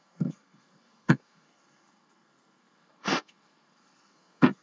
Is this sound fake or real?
fake